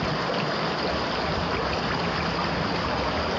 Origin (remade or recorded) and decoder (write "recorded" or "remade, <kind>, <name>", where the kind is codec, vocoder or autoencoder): recorded